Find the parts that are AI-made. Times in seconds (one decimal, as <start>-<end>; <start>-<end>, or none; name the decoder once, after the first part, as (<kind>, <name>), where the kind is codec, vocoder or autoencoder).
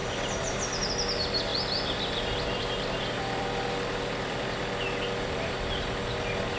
0.0-0.9 (vocoder, BigVGAN v2); 1.5-5.5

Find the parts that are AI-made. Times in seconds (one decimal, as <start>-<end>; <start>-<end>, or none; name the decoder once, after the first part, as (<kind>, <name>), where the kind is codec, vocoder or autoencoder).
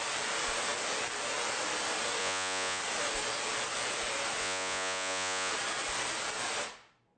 2.2-2.8 (vocoder, Vocos); 4.4-5.5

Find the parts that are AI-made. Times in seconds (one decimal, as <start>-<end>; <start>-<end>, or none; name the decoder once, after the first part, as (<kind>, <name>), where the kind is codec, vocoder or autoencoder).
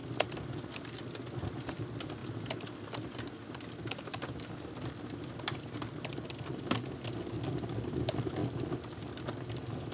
none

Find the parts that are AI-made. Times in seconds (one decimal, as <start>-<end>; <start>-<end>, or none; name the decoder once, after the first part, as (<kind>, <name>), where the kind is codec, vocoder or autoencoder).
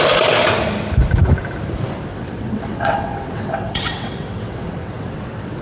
2.1-5.6 (vocoder, WaveNeXt)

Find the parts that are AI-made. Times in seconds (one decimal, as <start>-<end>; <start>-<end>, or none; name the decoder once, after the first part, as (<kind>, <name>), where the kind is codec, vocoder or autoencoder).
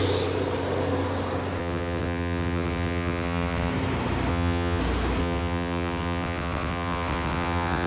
1.6-3.7 (vocoder, WaveNeXt); 4.3-4.8; 5.2-7.9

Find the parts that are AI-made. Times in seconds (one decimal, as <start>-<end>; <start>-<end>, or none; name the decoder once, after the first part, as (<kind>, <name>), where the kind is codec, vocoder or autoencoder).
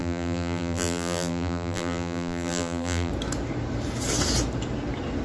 0.0-3.1 (vocoder, BigVGAN v2)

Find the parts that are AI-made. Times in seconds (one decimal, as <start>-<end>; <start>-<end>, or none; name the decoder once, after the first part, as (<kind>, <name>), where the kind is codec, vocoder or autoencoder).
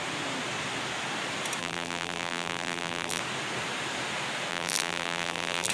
1.6-3.2 (vocoder, BigVGAN v2); 4.5-5.7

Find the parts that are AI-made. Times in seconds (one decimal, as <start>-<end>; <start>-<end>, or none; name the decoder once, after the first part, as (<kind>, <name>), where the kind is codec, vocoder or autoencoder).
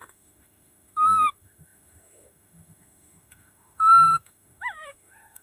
0.0-5.4 (autoencoder, DAC-VAE)